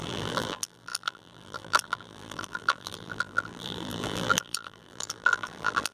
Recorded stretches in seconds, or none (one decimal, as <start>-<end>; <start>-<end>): none